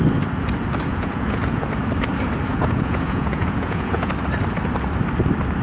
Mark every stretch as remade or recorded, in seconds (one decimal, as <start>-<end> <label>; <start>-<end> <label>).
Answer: 0.0-0.9 recorded; 0.9-1.7 remade; 1.7-2.5 recorded; 2.5-4.1 remade; 4.1-5.6 recorded